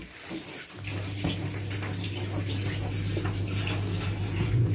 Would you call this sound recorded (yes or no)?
yes